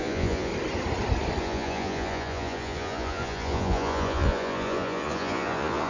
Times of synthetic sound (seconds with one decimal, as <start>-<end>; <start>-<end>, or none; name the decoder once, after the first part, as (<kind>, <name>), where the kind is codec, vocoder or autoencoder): 0.0-0.5 (vocoder, Vocos); 1.4-5.9